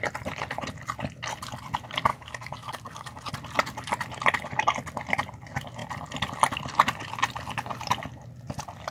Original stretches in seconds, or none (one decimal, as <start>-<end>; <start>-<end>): 0.0-2.1; 3.3-8.9

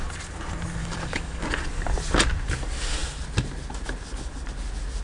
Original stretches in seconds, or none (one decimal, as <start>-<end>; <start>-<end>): 0.0-0.8; 1.4-5.0

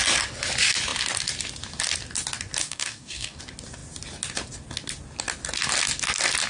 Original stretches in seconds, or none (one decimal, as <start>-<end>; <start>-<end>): 0.0-2.6; 3.4-6.5